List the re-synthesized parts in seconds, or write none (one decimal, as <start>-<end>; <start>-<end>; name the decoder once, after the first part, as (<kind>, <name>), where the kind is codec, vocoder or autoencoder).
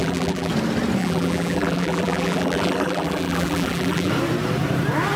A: 0.0-0.5 (vocoder, BigVGAN v2); 1.0-4.1